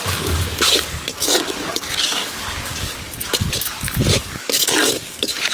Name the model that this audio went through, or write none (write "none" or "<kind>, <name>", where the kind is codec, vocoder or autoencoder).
codec, DAC